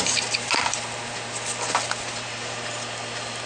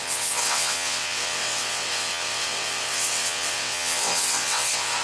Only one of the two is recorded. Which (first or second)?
first